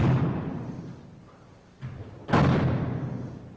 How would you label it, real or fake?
real